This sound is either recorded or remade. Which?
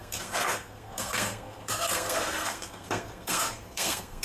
remade